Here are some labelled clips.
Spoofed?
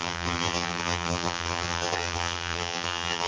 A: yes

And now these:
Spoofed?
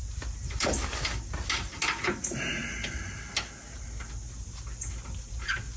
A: no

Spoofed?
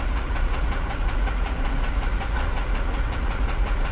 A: yes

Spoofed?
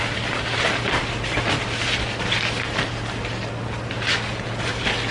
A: no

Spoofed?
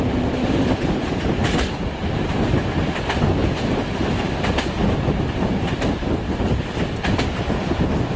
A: no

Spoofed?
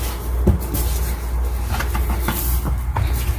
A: no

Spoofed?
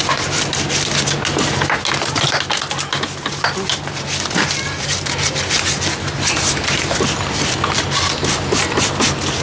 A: no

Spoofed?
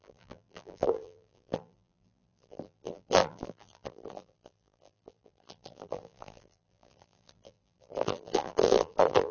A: yes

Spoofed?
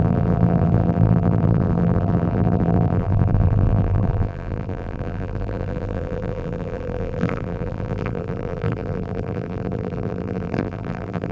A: yes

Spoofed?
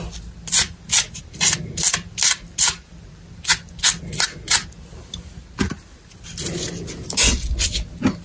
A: no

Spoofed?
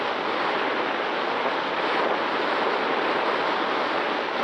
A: no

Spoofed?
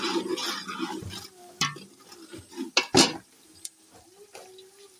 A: no